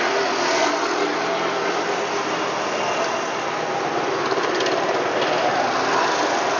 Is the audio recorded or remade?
recorded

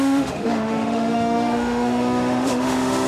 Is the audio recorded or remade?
remade